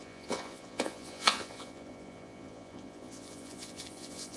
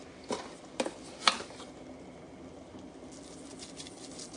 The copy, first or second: first